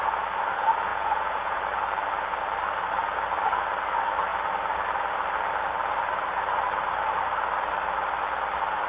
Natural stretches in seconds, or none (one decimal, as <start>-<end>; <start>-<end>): 0.0-0.9; 1.6-8.9